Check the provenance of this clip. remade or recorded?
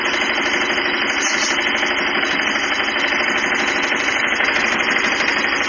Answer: recorded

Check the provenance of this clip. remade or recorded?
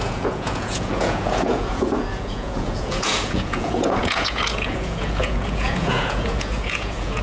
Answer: remade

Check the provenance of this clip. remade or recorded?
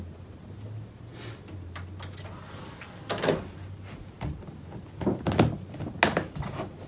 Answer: recorded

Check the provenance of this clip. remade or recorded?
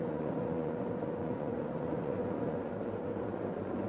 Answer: remade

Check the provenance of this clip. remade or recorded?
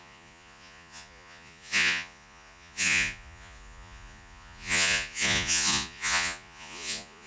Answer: remade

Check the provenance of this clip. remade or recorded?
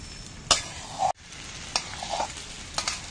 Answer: recorded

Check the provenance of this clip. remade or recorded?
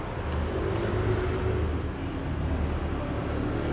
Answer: recorded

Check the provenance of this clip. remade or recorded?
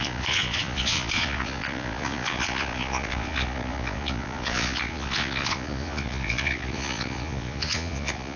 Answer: remade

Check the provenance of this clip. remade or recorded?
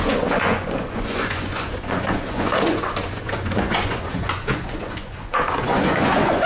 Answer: remade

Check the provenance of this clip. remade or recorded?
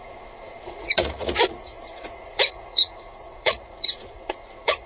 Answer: remade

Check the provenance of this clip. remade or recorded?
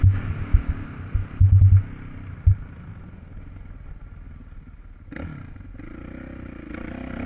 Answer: recorded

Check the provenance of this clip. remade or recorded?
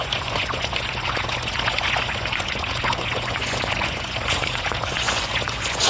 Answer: remade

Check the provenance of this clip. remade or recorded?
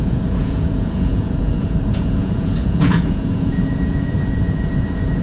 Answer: remade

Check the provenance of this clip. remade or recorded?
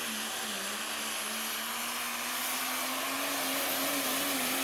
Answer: recorded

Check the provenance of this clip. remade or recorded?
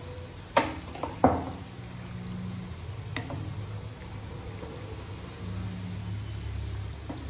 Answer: recorded